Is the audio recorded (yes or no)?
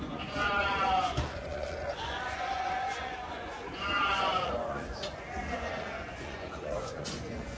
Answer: no